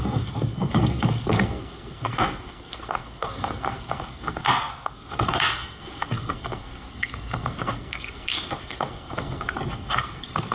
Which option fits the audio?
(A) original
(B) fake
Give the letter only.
B